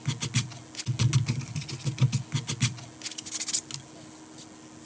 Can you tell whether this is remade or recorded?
recorded